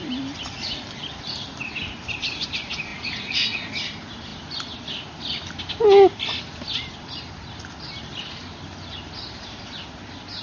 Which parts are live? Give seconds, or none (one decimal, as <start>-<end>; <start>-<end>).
0.0-2.9; 3.7-10.4